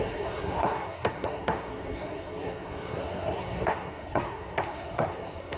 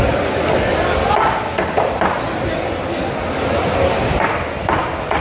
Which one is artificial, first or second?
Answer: first